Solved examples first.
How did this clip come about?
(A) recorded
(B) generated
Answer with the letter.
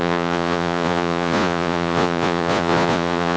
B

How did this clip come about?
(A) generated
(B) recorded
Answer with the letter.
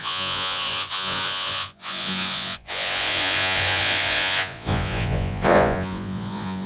A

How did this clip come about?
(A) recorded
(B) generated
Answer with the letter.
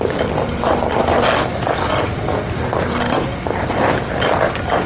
A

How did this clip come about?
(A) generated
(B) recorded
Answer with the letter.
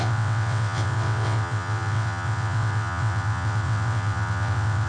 A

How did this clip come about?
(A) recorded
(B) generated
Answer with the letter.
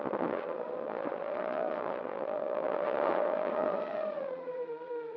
B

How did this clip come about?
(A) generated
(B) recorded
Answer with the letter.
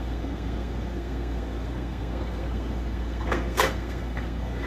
A